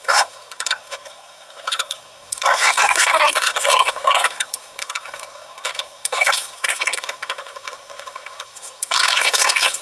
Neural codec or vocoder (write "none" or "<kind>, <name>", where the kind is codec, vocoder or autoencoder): codec, SNAC